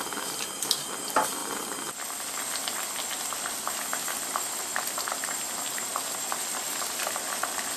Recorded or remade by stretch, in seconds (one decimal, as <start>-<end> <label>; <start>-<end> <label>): 0.0-7.8 recorded